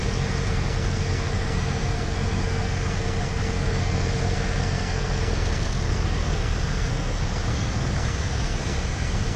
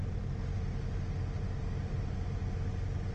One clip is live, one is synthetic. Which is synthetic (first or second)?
first